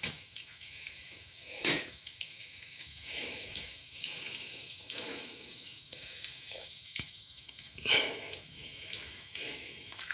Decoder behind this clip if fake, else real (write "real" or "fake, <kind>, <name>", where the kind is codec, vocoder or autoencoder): fake, autoencoder, DAC-VAE